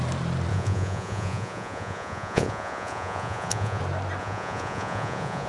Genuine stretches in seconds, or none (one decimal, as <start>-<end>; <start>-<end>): 0.0-0.5; 3.8-4.2